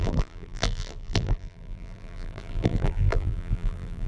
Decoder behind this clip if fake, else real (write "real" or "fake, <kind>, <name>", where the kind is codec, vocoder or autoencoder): fake, vocoder, BigVGAN v2